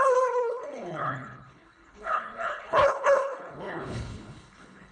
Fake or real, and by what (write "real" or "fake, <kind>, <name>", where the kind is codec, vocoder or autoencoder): fake, codec, HILCodec